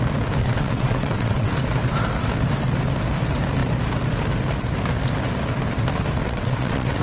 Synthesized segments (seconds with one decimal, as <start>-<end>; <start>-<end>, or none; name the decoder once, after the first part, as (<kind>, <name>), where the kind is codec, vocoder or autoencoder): 0.4-1.5 (vocoder, WaveNeXt); 6.2-7.0